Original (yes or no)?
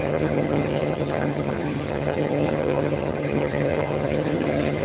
no